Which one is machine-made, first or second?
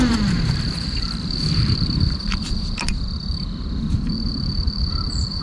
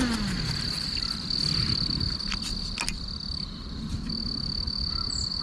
first